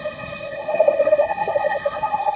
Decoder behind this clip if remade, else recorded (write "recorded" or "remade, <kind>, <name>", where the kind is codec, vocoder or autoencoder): remade, codec, SNAC